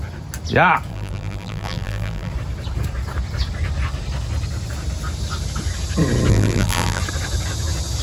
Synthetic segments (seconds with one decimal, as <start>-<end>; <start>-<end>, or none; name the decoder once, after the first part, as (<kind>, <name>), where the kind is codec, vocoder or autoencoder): 0.9-2.3 (vocoder, BigVGAN v2); 6.3-7.0